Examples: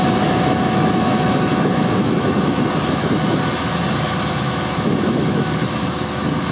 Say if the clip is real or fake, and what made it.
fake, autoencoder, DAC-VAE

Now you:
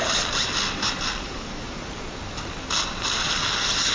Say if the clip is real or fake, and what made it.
real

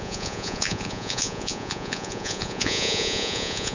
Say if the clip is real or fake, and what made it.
fake, vocoder, Vocos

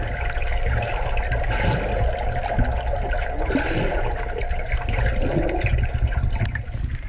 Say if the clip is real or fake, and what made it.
real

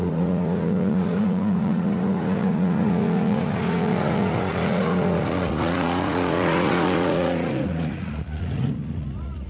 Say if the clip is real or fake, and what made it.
fake, vocoder, Vocos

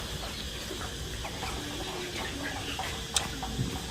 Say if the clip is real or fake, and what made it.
real